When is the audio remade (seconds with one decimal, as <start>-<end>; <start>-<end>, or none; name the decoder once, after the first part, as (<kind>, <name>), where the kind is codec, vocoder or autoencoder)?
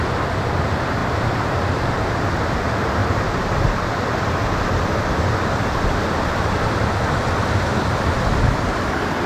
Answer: none